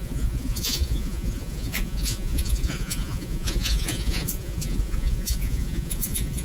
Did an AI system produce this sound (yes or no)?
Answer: yes